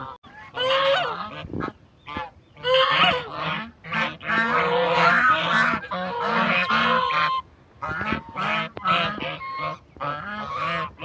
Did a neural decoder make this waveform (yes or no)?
no